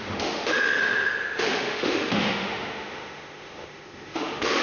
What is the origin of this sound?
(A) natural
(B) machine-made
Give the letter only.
B